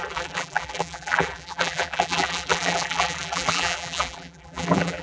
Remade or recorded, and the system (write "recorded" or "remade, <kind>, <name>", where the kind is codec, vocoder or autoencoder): remade, vocoder, BigVGAN v2